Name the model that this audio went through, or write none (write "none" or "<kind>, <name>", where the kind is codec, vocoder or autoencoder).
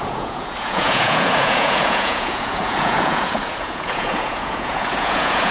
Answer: vocoder, Vocos